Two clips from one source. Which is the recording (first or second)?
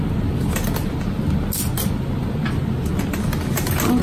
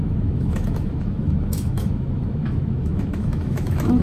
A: first